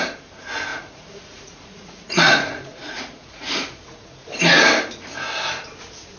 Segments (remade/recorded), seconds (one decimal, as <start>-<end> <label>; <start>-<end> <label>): 0.0-0.7 recorded; 0.7-4.4 remade; 4.4-6.2 recorded